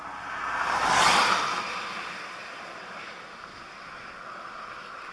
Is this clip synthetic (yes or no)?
no